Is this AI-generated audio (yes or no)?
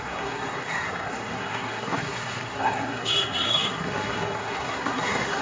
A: yes